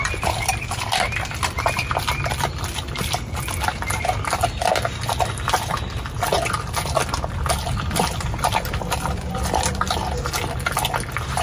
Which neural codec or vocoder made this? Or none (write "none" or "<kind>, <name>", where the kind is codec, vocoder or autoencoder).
none